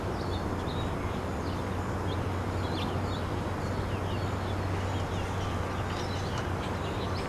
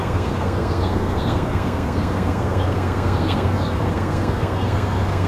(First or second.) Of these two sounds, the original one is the first